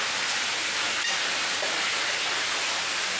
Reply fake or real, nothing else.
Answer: real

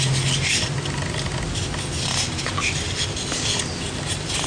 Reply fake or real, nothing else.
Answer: real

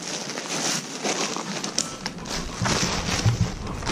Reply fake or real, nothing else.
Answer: real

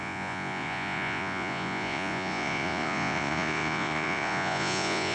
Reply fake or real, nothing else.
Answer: fake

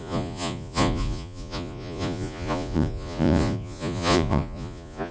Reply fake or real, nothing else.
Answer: fake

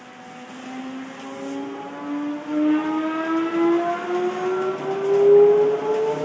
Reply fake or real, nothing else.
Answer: real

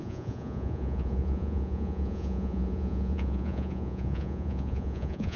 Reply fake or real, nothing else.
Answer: fake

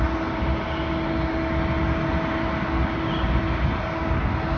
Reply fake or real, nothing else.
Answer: real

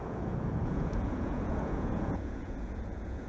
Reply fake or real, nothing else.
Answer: fake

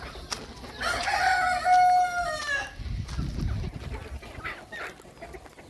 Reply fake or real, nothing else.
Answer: real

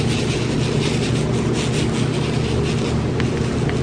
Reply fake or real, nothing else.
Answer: real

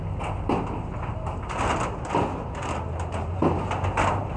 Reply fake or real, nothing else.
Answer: real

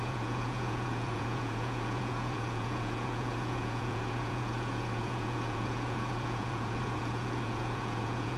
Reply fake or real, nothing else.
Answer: fake